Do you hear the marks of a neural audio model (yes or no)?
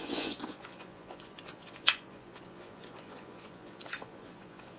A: yes